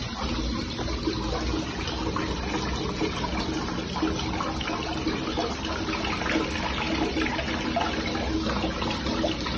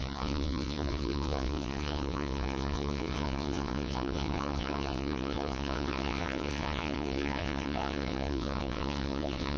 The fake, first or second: second